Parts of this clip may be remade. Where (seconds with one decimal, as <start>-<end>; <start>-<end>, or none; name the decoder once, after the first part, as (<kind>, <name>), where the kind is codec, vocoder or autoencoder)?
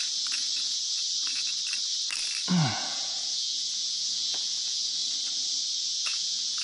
0.0-1.0 (vocoder, Vocos); 2.7-5.0; 5.8-6.6